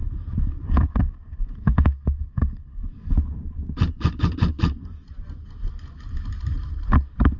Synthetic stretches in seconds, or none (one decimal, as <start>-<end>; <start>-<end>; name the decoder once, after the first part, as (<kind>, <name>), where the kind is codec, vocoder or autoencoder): 0.7-2.9 (codec, SNAC)